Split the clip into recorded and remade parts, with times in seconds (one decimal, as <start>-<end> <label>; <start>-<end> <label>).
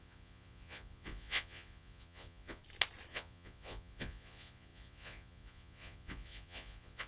0.0-2.6 remade; 2.6-3.1 recorded; 3.1-7.1 remade